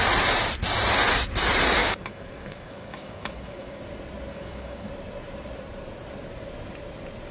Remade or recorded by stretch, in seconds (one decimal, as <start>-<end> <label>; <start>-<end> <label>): 0.0-1.8 recorded; 1.8-3.8 remade; 3.8-4.3 recorded; 4.3-4.9 remade; 4.9-7.3 recorded

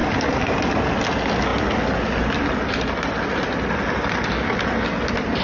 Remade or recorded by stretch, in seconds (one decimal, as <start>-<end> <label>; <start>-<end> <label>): 0.0-5.4 recorded

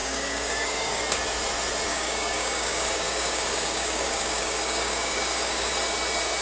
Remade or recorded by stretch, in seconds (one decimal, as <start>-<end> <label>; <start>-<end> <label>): 0.0-1.0 remade; 1.0-1.9 recorded; 1.9-5.7 remade; 5.7-6.4 recorded

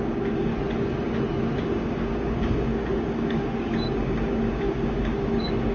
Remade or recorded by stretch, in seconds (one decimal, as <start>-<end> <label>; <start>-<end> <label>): 0.0-0.5 remade; 0.5-1.6 recorded; 1.6-5.7 remade

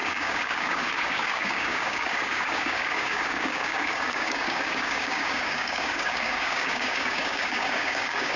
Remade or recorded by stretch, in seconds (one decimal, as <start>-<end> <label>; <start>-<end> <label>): 0.0-8.4 remade